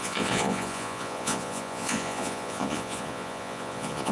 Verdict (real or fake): fake